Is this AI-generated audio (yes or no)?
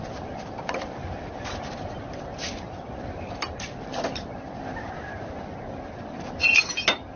no